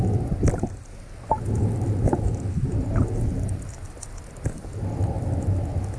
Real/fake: real